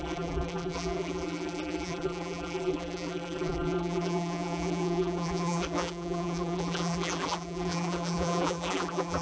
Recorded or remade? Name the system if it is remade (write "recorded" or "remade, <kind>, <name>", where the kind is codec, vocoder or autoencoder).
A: remade, vocoder, BigVGAN v2